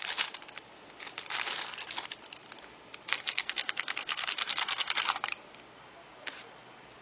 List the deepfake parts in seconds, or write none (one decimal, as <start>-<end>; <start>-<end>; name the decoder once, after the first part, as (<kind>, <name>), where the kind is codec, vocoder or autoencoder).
3.1-4.9 (codec, SNAC)